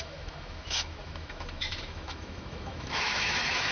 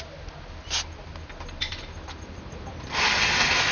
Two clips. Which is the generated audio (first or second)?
first